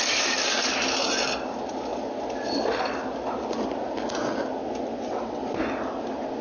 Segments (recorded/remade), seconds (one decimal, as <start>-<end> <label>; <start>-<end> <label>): 0.0-4.9 recorded; 4.9-5.4 remade; 5.4-6.4 recorded